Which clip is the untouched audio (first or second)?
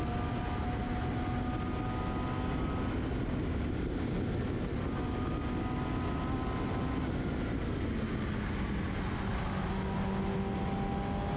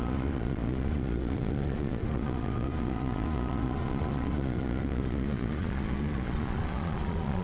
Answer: first